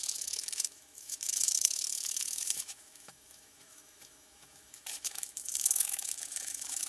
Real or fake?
fake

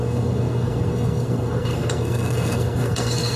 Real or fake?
fake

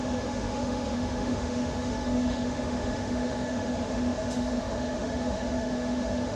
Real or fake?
fake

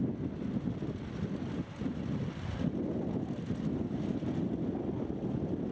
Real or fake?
real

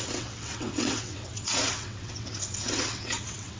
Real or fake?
fake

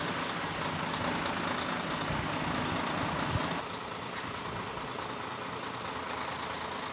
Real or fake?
real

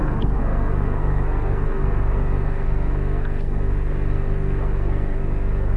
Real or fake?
fake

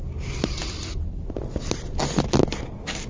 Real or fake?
real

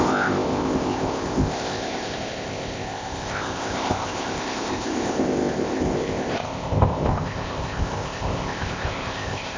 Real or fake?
fake